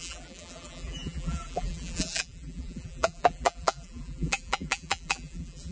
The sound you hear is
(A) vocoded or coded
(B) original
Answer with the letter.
A